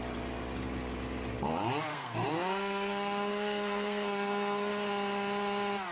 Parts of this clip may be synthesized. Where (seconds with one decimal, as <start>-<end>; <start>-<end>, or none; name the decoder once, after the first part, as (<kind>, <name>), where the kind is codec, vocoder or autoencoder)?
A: 1.9-4.7 (codec, SNAC)